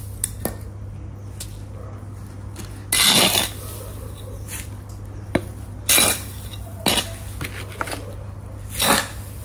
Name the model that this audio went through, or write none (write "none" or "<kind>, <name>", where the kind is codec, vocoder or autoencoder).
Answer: none